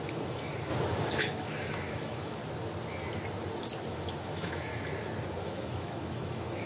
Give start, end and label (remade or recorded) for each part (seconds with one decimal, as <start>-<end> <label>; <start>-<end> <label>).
0.0-0.7 remade; 0.7-1.2 recorded; 1.2-2.4 remade; 2.4-3.9 recorded; 3.9-4.7 remade; 4.7-5.4 recorded; 5.4-6.7 remade